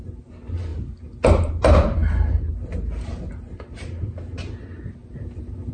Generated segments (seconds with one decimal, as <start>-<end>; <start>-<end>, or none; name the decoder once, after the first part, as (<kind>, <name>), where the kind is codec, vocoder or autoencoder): none